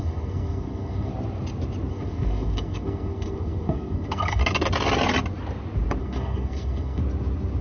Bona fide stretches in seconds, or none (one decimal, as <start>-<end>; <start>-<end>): 1.1-1.9; 4.4-6.0; 7.0-7.6